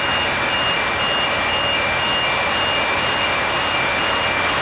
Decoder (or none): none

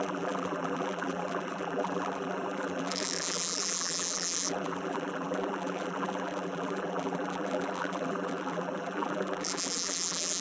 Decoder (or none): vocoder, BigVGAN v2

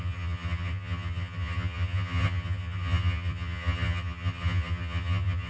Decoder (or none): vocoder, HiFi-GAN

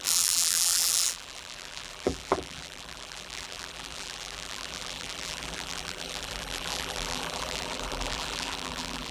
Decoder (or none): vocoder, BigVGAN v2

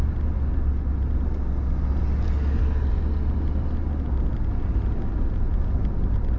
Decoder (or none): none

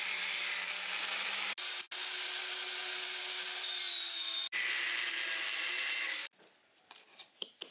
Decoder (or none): none